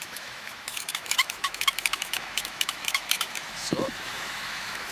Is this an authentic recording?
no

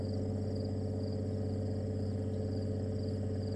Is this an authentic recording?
yes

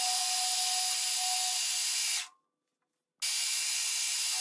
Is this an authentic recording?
yes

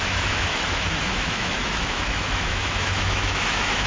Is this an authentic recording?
no